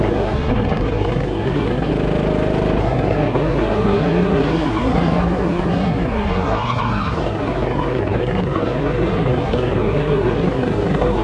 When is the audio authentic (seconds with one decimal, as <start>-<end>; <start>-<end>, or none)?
1.9-2.8